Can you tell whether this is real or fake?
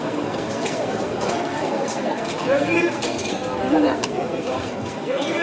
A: fake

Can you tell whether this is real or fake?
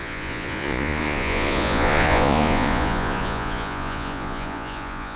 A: fake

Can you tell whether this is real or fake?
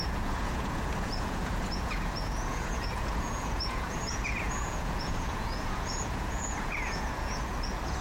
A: fake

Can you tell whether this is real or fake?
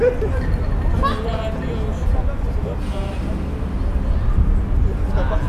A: real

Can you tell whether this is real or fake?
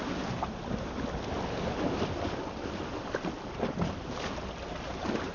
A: real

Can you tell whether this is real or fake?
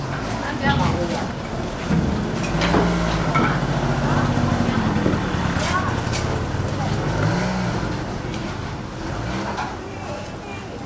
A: real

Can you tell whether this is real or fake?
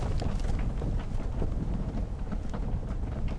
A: real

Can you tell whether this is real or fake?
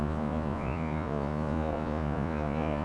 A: fake